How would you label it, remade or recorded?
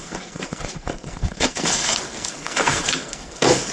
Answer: remade